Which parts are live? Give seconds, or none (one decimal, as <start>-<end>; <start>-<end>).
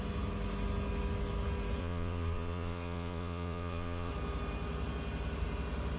0.0-1.8; 4.1-6.0